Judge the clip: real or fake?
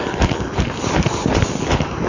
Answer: real